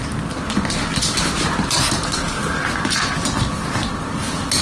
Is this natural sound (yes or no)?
yes